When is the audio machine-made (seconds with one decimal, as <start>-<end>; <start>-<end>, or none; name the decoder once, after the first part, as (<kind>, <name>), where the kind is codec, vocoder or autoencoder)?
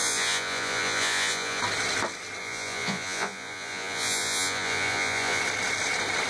0.0-1.6 (vocoder, Vocos); 2.4-5.4